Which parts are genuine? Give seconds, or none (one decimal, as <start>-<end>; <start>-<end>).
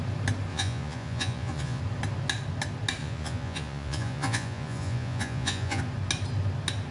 0.0-0.5; 1.8-3.0; 5.8-6.9